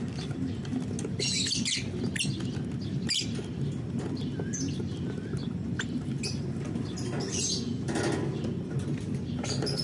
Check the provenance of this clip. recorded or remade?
recorded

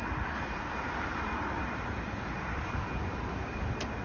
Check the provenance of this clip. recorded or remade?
recorded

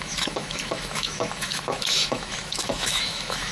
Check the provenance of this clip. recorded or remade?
remade